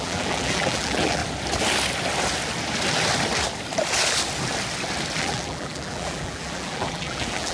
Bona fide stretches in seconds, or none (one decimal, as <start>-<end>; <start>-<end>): 1.2-5.2